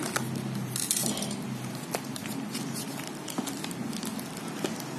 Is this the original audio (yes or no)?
yes